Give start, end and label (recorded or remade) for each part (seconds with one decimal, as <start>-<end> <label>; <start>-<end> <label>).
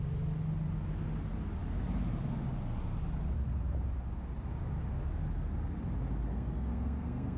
0.0-6.3 recorded; 6.3-7.4 remade